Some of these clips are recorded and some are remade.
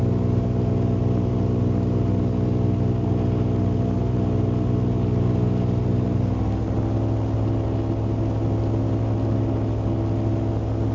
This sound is recorded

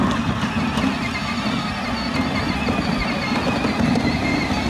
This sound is recorded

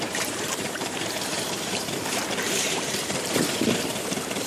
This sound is remade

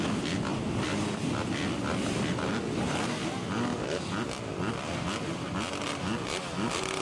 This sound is recorded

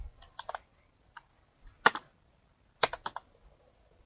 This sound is recorded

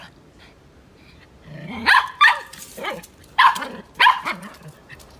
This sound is remade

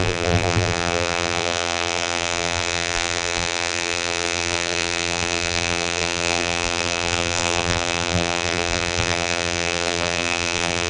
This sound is remade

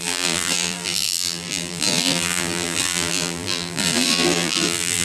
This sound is remade